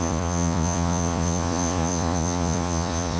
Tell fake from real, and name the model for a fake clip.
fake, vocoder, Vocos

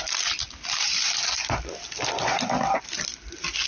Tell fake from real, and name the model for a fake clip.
real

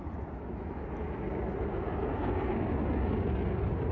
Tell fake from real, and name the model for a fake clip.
real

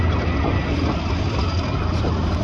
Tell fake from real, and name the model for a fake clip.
real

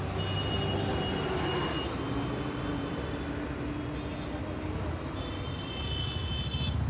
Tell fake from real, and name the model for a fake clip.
real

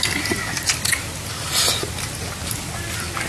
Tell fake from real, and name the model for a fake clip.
real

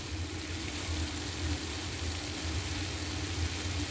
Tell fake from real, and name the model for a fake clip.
real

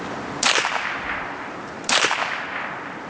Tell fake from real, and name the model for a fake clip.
real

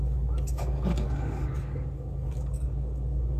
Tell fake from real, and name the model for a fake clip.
fake, codec, DAC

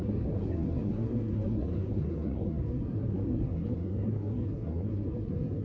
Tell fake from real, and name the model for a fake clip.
fake, codec, SNAC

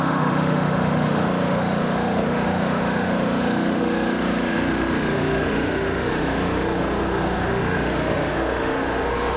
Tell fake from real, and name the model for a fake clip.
fake, autoencoder, DAC-VAE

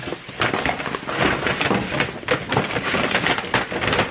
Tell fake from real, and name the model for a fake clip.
real